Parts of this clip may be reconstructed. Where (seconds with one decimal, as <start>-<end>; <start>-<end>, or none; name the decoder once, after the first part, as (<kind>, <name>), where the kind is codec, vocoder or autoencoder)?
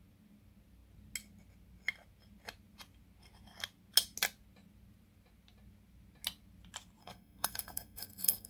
7.0-8.5 (codec, SNAC)